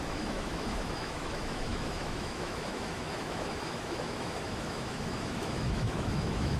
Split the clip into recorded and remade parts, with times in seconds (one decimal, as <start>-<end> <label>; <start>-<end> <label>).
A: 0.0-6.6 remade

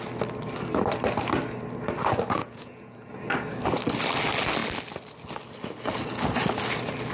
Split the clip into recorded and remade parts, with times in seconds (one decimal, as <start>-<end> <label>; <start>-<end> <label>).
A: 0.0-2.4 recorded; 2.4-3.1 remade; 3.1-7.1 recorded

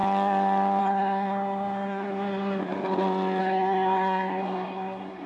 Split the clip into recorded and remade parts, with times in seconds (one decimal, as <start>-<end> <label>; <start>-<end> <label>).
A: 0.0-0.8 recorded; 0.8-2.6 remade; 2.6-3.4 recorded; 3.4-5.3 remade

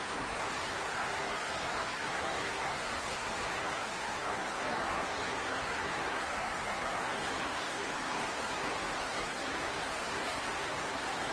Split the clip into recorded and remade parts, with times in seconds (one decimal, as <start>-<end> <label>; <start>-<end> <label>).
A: 0.0-11.3 remade

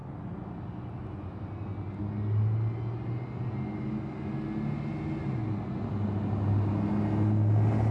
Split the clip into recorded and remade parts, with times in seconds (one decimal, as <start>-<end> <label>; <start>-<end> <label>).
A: 0.0-7.9 recorded

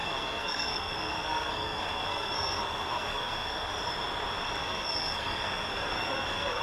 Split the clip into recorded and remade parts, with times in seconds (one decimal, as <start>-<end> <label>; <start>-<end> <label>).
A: 0.0-3.7 remade; 3.7-4.6 recorded; 4.6-6.6 remade

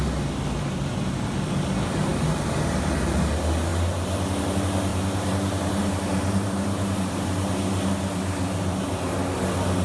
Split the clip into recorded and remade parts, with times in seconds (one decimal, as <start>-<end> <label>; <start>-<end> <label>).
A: 0.0-4.9 recorded; 4.9-7.5 remade; 7.5-9.8 recorded

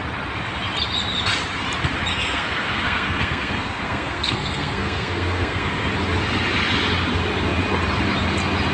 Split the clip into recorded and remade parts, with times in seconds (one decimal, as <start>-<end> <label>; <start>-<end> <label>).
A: 0.0-2.1 recorded; 2.1-5.9 remade; 5.9-8.7 recorded